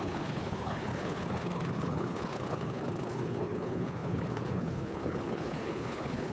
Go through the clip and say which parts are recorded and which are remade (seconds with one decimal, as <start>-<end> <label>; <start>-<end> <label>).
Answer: 0.0-6.3 remade